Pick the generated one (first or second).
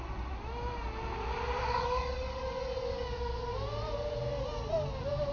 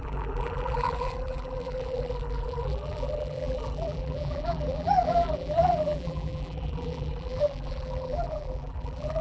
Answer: second